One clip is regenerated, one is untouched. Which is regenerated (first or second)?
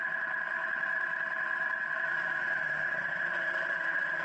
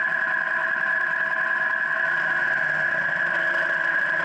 first